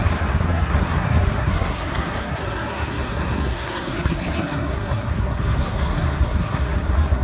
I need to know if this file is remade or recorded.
remade